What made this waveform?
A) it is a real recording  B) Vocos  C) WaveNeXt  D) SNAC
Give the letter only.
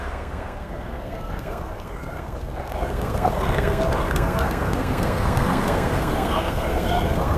D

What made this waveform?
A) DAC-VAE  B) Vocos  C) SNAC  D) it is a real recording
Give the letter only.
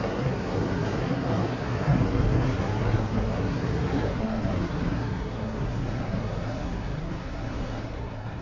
C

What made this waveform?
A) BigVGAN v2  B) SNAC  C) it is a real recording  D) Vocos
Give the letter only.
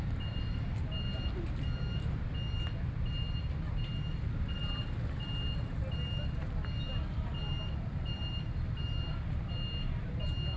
C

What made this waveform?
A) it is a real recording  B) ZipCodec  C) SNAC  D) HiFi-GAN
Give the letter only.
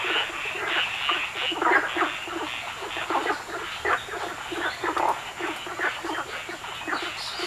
A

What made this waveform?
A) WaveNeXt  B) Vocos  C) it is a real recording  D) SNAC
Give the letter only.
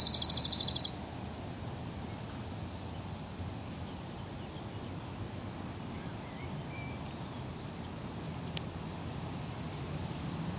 C